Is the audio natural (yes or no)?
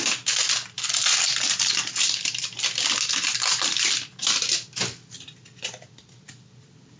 yes